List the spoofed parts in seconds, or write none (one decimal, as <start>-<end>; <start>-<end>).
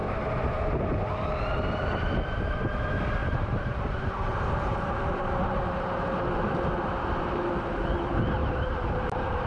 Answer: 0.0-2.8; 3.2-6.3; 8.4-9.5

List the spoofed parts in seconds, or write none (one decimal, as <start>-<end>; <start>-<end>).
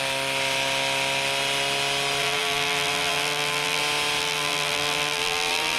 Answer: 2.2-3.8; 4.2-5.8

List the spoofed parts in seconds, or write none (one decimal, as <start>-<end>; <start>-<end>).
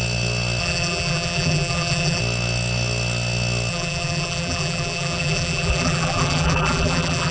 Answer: 0.6-2.2; 3.7-7.3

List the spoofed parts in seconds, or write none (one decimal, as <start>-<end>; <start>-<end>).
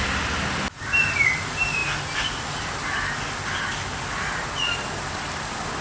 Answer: none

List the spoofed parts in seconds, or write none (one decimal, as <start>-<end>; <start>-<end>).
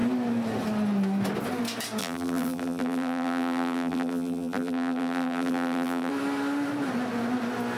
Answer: 2.0-6.1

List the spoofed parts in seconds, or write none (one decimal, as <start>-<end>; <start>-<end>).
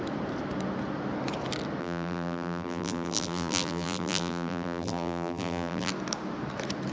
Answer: 1.8-5.9